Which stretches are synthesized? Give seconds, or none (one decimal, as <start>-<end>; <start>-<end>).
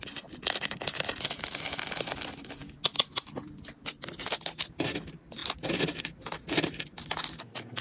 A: none